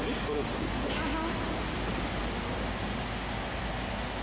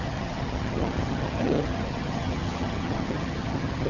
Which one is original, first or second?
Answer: first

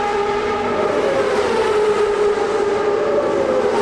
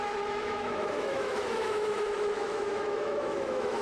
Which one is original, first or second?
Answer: first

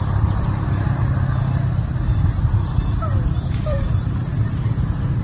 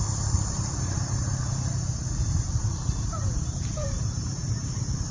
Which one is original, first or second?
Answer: first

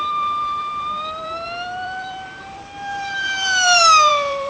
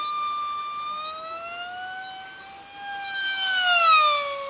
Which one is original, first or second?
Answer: second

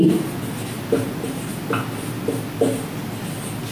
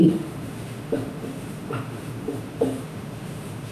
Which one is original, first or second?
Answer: first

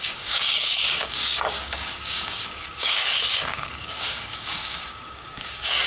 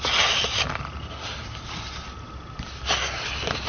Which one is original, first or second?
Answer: second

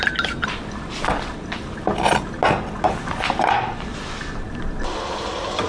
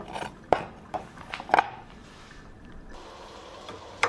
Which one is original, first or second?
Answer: first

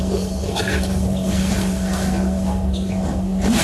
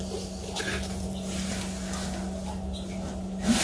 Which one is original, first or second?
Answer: second